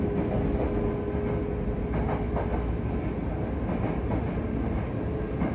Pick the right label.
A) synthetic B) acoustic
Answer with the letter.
B